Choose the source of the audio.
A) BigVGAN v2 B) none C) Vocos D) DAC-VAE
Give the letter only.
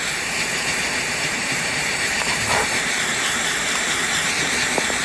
A